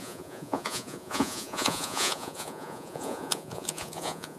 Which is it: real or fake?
fake